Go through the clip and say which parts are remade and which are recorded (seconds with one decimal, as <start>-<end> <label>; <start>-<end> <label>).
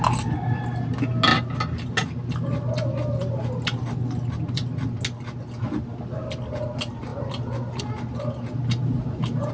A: 0.0-8.8 recorded; 8.8-9.5 remade